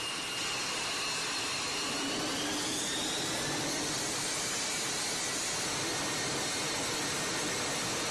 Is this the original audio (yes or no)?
yes